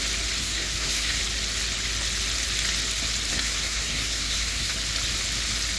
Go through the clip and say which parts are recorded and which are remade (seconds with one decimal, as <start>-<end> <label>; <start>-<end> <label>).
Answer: 0.0-0.4 recorded; 0.4-1.2 remade; 1.2-3.3 recorded; 3.3-4.7 remade; 4.7-5.8 recorded